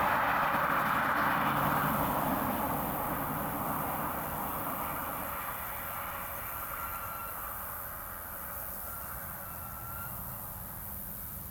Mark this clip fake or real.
real